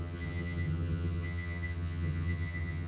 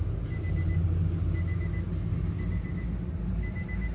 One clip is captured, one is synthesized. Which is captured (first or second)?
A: second